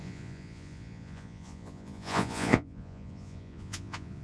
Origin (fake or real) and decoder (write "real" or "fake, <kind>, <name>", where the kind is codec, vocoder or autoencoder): fake, vocoder, Vocos